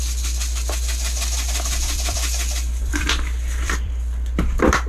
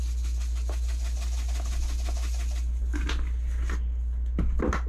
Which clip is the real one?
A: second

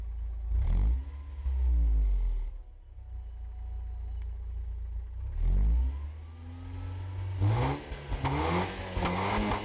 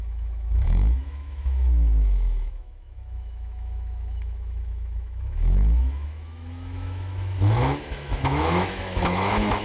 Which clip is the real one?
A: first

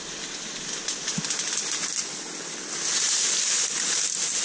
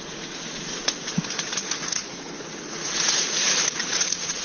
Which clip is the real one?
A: first